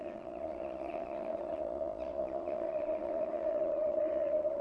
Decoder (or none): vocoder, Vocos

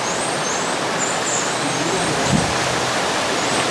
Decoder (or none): none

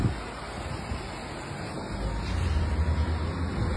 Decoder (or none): none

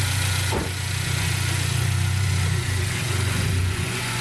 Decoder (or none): vocoder, Vocos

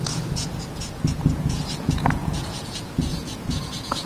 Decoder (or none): vocoder, Vocos